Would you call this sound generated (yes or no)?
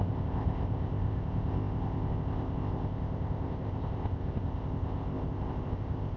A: yes